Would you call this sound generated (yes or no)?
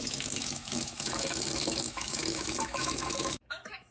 yes